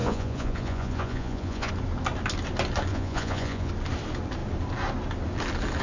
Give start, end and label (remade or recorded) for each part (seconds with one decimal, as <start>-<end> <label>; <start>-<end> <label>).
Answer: 0.0-1.7 remade; 1.7-2.9 recorded; 2.9-3.7 remade; 3.7-5.8 recorded